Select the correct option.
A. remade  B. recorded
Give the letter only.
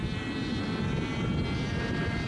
B